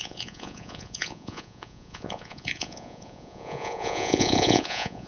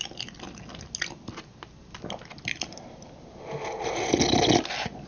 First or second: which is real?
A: second